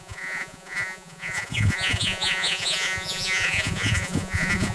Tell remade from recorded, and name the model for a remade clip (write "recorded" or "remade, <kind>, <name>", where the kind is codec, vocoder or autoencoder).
remade, vocoder, Vocos